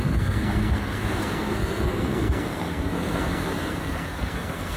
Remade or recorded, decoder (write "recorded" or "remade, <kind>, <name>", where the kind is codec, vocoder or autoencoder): remade, codec, SNAC